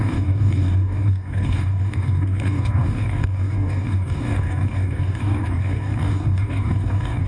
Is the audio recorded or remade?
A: remade